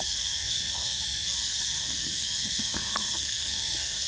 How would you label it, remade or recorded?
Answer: remade